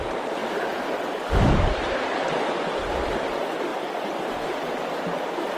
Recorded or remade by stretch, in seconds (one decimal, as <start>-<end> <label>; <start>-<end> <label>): 0.0-5.6 recorded